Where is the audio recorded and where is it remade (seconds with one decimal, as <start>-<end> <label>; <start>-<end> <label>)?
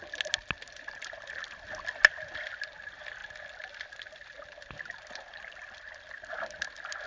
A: 0.0-7.1 recorded